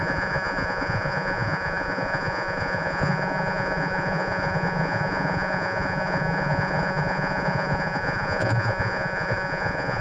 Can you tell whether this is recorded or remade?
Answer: remade